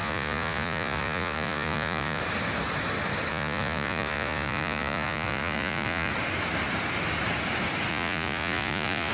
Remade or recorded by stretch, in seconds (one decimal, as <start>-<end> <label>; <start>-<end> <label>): 0.0-2.2 remade; 2.2-3.3 recorded; 3.3-6.1 remade; 6.1-7.9 recorded; 7.9-9.1 remade